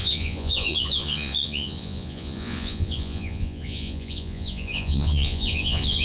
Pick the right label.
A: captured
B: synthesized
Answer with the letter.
B